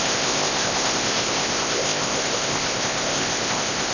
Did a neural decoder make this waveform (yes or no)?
yes